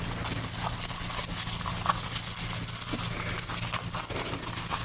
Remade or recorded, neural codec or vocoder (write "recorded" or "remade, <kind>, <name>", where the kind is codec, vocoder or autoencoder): recorded